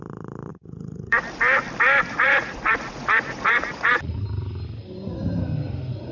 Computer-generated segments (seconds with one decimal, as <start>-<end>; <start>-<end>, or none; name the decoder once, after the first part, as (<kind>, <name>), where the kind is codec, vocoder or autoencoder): 0.5-1.2 (vocoder, Vocos); 2.1-4.1